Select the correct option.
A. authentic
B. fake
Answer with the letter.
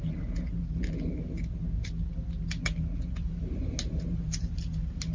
A